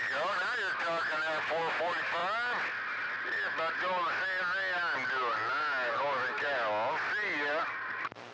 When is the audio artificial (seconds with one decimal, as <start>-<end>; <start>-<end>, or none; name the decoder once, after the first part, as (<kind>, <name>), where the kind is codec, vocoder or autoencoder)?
none